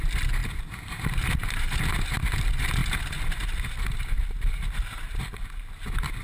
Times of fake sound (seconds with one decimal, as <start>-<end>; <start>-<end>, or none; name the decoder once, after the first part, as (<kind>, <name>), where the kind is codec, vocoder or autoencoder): none